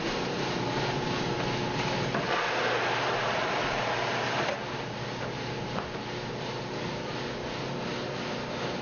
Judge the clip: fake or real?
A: real